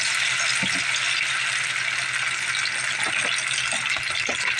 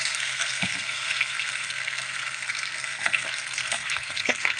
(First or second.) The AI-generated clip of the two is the second